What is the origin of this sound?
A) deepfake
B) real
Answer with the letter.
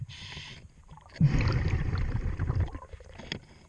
B